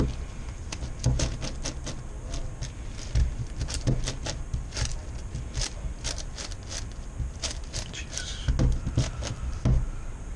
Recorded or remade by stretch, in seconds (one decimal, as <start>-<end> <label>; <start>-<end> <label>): 0.0-10.4 recorded